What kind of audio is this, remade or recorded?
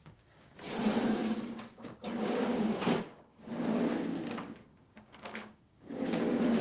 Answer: remade